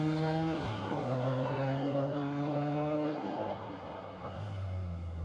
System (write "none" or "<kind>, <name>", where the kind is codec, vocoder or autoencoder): codec, SNAC